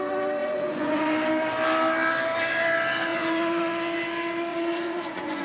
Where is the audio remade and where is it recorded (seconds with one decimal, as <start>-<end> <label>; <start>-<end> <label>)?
0.0-0.4 recorded; 0.4-1.0 remade; 1.0-3.1 recorded; 3.1-3.7 remade; 3.7-4.5 recorded; 4.5-5.4 remade

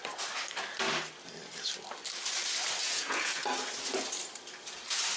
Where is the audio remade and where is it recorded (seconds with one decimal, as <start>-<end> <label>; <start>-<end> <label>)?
0.0-2.8 recorded; 2.8-3.4 remade; 3.4-5.2 recorded